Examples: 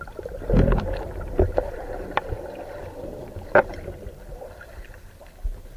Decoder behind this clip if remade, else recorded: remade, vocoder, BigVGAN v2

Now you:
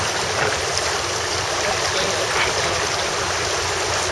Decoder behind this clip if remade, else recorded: recorded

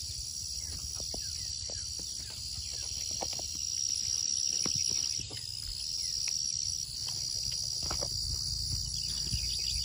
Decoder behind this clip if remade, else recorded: recorded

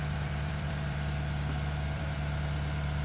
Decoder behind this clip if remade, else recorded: remade, vocoder, BigVGAN v2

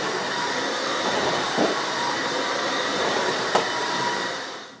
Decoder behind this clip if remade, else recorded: remade, vocoder, BigVGAN v2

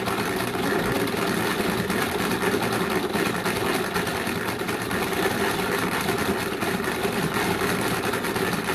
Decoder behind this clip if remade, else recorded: recorded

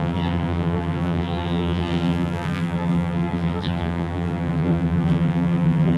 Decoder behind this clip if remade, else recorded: remade, vocoder, BigVGAN v2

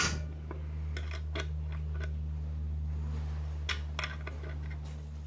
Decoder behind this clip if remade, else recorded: recorded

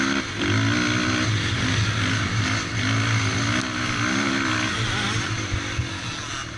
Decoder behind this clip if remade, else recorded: recorded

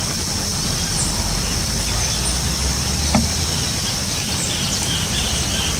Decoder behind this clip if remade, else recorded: remade, vocoder, BigVGAN v2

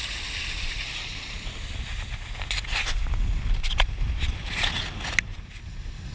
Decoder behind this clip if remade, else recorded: recorded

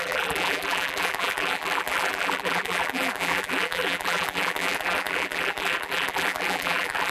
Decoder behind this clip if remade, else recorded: remade, vocoder, BigVGAN v2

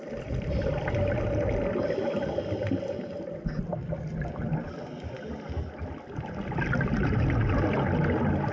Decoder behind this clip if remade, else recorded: recorded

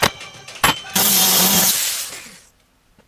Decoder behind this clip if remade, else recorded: recorded